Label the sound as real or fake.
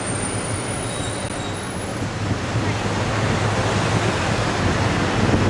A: real